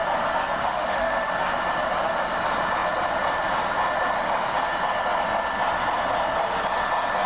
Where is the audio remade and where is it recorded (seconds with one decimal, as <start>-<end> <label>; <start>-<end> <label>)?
0.0-0.6 recorded; 0.6-1.3 remade; 1.3-7.3 recorded